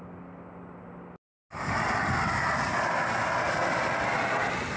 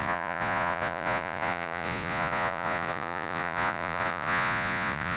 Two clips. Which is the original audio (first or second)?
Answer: first